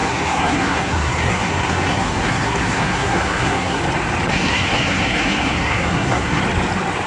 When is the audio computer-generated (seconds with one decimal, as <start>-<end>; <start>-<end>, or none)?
0.0-3.8; 4.3-6.4